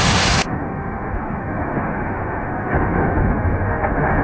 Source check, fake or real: fake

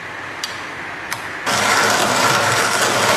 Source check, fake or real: real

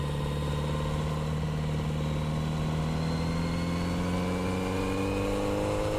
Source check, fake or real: real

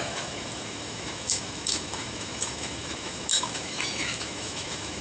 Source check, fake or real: fake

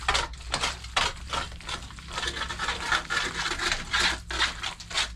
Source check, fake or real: real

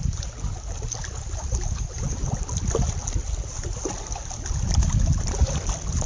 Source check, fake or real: real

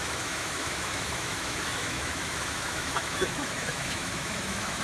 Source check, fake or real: fake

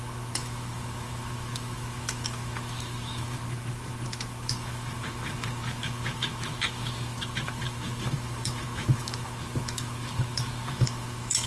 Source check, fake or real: fake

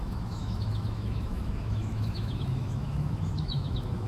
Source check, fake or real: fake